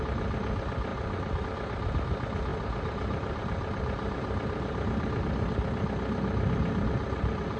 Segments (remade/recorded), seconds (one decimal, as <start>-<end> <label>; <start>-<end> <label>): 0.0-2.5 recorded; 2.5-5.2 remade; 5.2-7.6 recorded

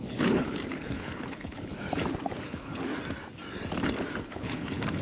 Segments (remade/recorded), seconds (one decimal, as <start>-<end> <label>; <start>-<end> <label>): 0.0-1.7 remade; 1.7-2.4 recorded; 2.4-2.9 remade; 2.9-4.2 recorded; 4.2-5.0 remade

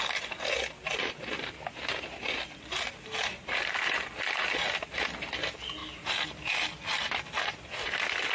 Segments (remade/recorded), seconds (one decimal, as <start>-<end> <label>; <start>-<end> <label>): 0.0-8.3 recorded

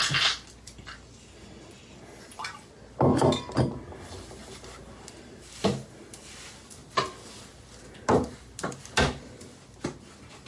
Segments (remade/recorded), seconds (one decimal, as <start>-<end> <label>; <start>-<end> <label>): 0.0-10.5 recorded

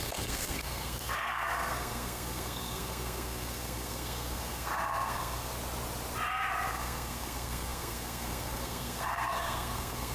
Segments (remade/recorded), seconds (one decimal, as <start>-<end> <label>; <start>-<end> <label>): 0.0-5.5 remade; 5.5-6.7 recorded; 6.7-10.1 remade